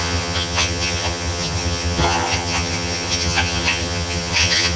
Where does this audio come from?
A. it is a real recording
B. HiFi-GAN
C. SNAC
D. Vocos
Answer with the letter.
B